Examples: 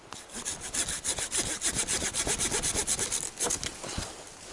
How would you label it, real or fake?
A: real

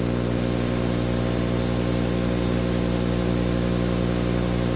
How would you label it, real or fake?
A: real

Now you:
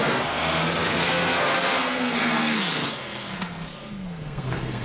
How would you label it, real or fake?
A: fake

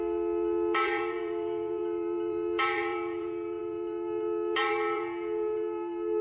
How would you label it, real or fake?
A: fake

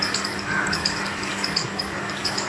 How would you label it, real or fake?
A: fake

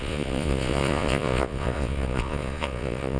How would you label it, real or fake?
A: fake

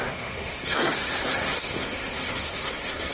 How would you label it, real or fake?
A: fake